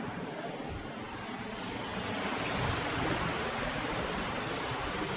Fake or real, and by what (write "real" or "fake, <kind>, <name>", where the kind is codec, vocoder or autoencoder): real